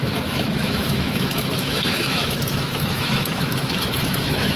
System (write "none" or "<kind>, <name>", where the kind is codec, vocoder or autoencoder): autoencoder, DAC-VAE